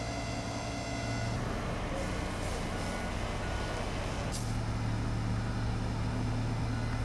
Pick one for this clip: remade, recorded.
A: recorded